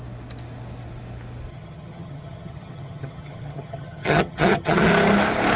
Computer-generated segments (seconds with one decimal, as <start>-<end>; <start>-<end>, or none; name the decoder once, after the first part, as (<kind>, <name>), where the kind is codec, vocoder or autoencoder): 1.5-4.9 (vocoder, HiFi-GAN)